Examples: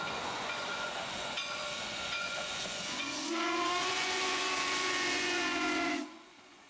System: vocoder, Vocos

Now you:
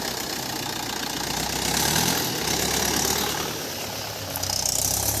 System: none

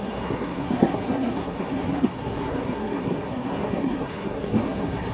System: codec, SNAC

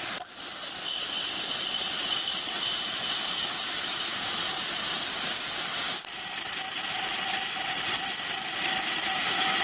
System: none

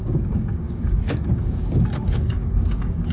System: codec, DAC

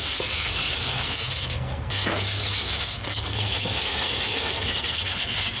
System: codec, SNAC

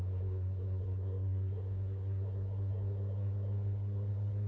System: codec, SNAC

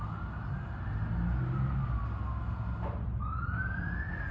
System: none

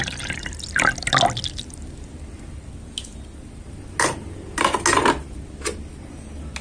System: none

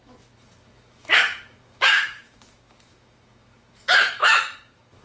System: autoencoder, DAC-VAE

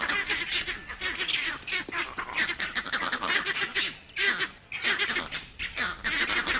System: none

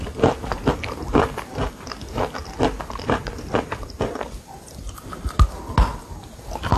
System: none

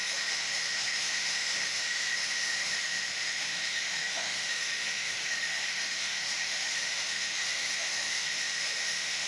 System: autoencoder, DAC-VAE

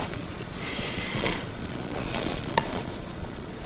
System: vocoder, Vocos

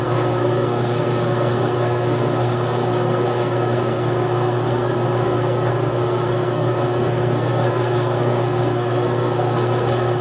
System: codec, SNAC